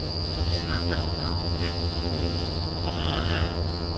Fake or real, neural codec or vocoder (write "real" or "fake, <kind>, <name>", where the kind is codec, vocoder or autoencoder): fake, vocoder, HiFi-GAN